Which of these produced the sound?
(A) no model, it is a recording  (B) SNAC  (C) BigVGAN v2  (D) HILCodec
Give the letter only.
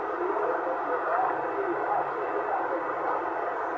A